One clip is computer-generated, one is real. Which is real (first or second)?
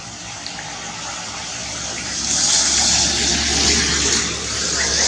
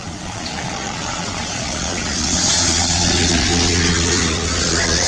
first